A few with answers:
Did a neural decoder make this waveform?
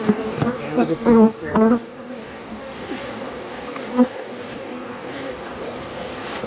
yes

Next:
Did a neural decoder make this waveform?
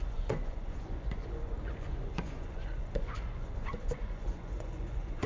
yes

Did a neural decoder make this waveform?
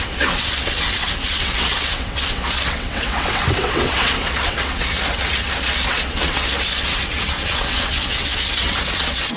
yes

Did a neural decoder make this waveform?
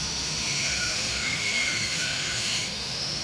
yes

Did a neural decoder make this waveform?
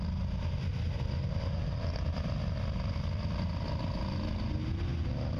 no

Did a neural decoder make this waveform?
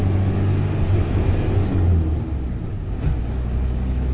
no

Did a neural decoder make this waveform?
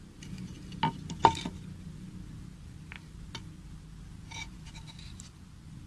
no